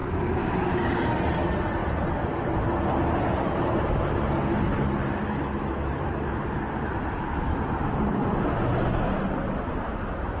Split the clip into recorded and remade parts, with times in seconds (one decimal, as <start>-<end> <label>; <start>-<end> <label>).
0.0-1.1 remade; 1.1-10.4 recorded